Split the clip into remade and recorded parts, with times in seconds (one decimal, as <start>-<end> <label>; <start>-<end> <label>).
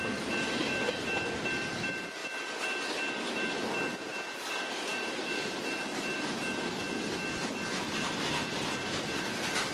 0.0-9.7 recorded